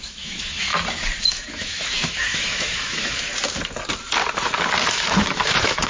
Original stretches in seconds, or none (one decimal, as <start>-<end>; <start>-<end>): 0.7-1.3; 3.3-4.9